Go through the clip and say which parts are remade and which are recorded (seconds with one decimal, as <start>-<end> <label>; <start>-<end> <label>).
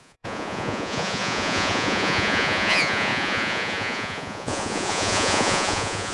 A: 0.0-6.1 remade